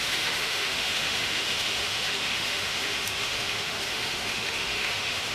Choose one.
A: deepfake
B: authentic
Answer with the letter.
A